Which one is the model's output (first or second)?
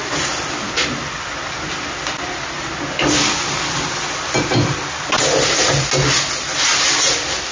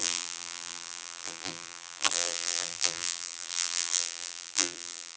second